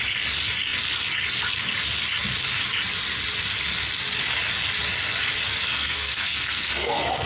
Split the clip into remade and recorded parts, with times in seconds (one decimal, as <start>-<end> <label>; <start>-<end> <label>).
0.0-5.7 recorded; 5.7-7.3 remade